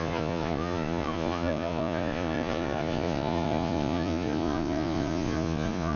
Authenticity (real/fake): fake